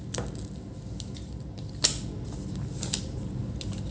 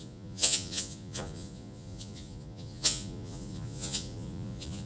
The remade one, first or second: second